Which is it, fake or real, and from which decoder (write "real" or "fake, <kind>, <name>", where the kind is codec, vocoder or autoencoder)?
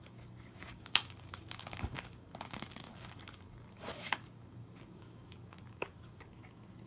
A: fake, codec, DAC